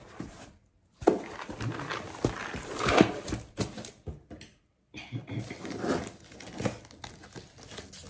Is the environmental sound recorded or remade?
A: recorded